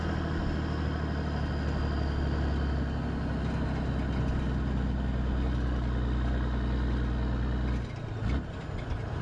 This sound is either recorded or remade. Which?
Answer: recorded